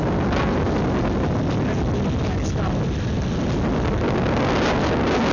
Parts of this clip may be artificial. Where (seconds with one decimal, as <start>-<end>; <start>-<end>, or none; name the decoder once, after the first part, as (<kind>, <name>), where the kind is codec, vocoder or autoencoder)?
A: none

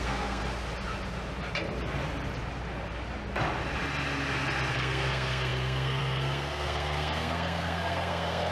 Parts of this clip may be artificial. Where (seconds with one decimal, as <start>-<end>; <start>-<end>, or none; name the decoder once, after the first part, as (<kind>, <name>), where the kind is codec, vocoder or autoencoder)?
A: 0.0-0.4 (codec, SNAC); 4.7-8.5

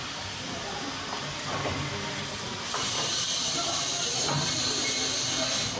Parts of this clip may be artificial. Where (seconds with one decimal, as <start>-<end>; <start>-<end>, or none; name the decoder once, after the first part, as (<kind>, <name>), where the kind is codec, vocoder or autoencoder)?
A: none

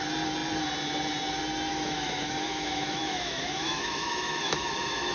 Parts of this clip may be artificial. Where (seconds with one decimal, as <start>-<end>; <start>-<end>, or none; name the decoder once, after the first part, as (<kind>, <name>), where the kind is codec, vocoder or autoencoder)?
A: 1.7-5.1 (autoencoder, DAC-VAE)